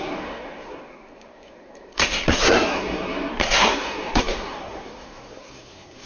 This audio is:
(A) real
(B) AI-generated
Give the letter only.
B